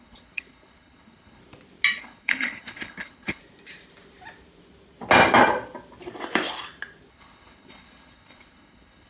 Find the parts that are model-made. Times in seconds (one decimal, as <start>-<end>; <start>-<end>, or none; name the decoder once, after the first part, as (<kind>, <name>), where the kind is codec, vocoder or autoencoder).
0.0-1.4 (codec, HILCodec); 2.0-3.4; 7.1-9.1